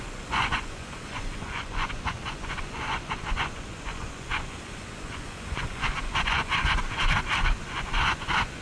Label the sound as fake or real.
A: fake